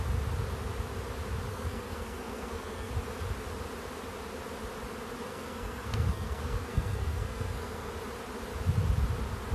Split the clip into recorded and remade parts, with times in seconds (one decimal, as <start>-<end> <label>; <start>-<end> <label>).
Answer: 0.0-1.5 recorded; 1.5-2.9 remade; 2.9-5.2 recorded; 5.2-7.9 remade; 7.9-9.5 recorded